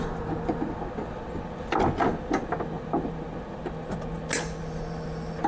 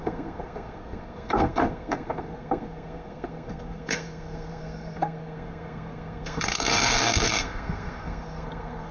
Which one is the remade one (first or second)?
second